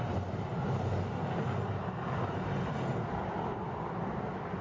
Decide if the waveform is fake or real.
real